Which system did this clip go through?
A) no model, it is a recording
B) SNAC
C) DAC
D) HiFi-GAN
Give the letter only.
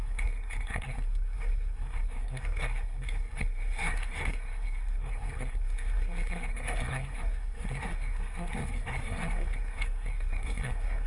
B